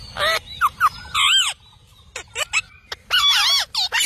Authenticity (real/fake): real